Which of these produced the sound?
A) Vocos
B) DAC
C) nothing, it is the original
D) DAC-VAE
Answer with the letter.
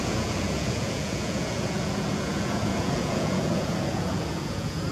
A